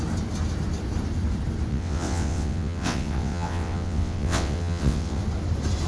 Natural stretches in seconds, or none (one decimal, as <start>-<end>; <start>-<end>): 0.0-1.7; 5.2-5.9